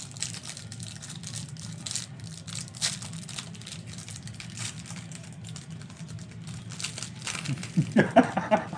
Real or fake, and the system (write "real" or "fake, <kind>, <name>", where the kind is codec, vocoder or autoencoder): fake, vocoder, BigVGAN v2